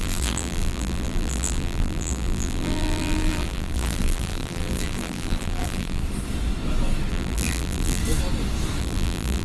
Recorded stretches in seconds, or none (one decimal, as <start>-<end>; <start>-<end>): 6.0-7.1; 8.0-8.8